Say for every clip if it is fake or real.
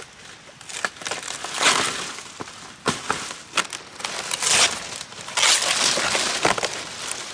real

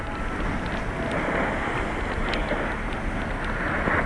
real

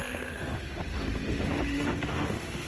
fake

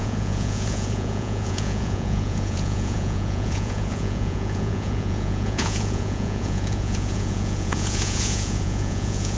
fake